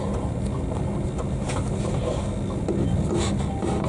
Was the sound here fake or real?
real